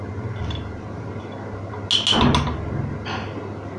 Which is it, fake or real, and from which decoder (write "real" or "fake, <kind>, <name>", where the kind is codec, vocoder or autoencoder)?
real